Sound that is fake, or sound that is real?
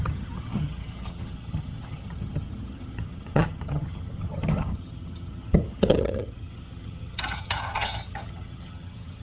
fake